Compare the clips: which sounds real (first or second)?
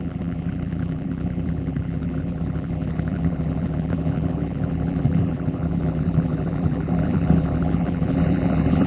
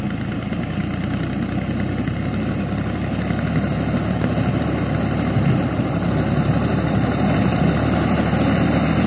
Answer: second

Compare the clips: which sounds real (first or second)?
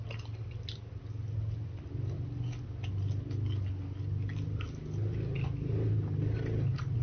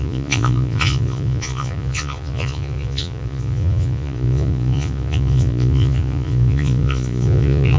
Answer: first